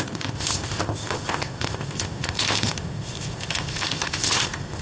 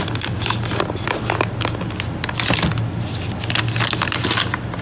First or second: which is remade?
first